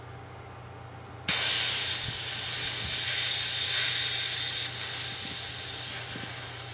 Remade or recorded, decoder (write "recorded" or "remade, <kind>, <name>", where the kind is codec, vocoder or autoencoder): recorded